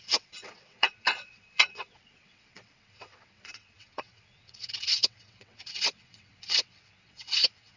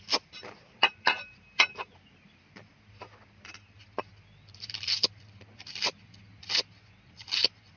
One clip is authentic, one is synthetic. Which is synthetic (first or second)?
first